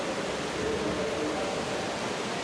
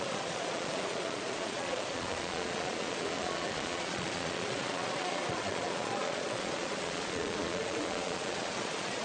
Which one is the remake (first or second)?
second